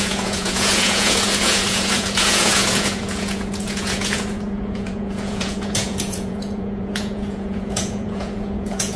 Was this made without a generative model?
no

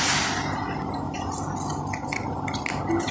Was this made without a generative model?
yes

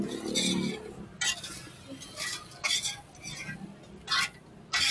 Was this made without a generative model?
yes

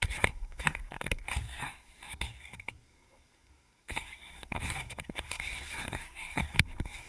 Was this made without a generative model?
no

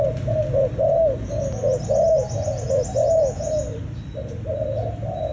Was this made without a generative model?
yes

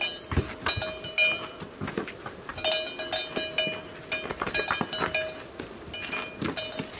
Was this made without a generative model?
yes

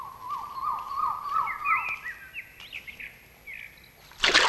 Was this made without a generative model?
yes